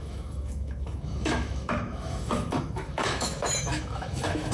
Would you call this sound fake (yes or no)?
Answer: yes